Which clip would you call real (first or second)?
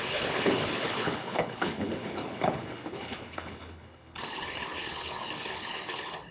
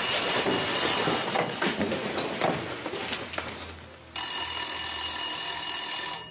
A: second